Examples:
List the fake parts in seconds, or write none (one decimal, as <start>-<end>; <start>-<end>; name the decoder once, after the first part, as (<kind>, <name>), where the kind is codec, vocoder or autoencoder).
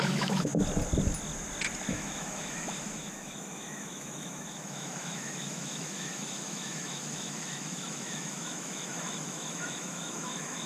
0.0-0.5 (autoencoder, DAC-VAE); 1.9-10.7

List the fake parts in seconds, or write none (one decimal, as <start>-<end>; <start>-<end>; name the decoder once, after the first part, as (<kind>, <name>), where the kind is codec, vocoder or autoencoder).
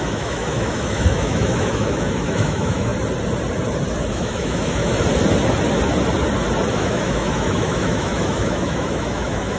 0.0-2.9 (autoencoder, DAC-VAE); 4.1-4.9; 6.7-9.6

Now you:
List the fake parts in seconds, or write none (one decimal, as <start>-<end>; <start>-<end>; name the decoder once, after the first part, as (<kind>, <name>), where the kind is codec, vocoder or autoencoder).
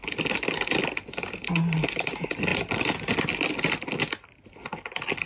none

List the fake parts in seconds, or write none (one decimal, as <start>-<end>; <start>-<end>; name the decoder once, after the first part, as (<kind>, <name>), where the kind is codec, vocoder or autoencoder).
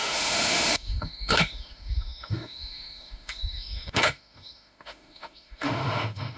0.0-6.4 (autoencoder, DAC-VAE)